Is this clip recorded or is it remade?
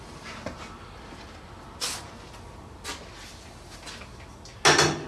recorded